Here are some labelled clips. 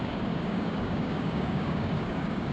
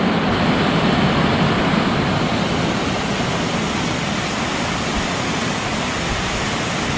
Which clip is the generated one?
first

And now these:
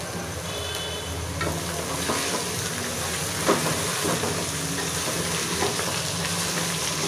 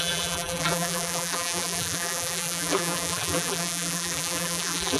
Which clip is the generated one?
second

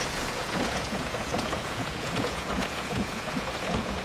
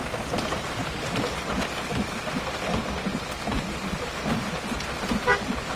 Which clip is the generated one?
first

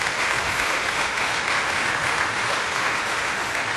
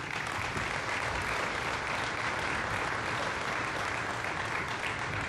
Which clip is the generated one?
first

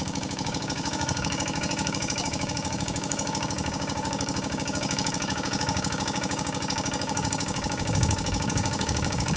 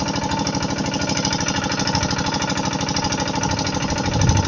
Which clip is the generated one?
first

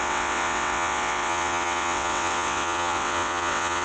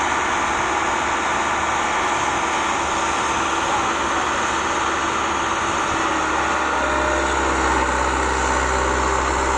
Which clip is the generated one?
first